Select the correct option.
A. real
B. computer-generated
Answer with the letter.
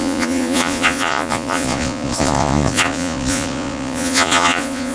B